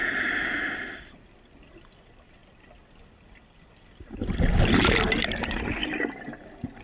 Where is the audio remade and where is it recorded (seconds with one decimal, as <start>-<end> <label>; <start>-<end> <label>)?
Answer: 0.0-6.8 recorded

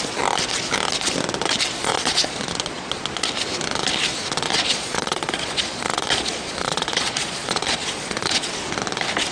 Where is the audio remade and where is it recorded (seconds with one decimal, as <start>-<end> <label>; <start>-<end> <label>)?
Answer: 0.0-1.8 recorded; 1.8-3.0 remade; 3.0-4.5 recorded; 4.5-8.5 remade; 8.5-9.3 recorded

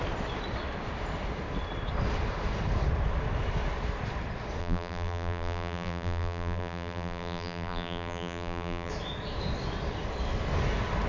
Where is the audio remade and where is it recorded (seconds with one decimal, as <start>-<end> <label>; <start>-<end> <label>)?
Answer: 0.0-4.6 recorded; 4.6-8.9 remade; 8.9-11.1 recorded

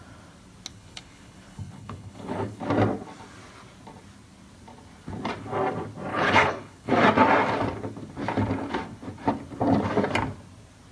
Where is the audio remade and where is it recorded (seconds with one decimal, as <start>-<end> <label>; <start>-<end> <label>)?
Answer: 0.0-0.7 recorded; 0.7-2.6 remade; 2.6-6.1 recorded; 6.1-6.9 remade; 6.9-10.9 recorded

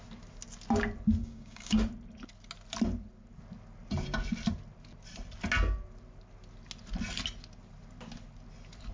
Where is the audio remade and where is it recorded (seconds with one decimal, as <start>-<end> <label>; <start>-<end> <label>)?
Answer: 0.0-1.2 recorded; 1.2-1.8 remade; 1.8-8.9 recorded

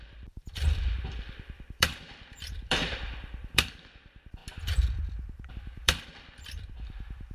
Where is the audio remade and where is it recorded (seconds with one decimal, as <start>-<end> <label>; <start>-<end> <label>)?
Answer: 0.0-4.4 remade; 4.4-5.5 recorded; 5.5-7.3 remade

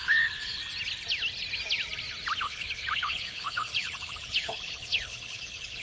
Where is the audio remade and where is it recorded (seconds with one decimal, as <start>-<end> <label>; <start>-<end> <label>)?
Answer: 0.0-0.6 remade; 0.6-2.4 recorded; 2.4-5.8 remade